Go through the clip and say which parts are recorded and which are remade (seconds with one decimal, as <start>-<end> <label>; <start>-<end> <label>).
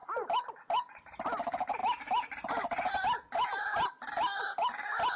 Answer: 0.0-5.2 recorded